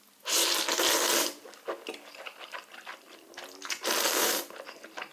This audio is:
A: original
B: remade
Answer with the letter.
A